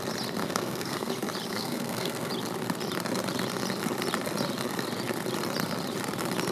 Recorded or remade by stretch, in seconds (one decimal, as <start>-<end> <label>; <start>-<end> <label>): 0.0-0.4 recorded; 0.4-1.1 remade; 1.1-1.5 recorded; 1.5-2.3 remade; 2.3-6.5 recorded